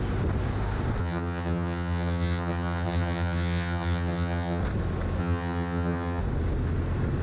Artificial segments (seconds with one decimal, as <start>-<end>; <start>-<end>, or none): 1.0-4.6; 5.2-6.2